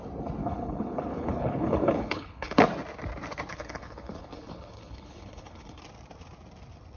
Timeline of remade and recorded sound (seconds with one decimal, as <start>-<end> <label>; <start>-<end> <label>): 0.0-0.4 recorded; 0.4-2.6 remade; 2.6-3.5 recorded; 3.5-5.8 remade; 5.8-7.0 recorded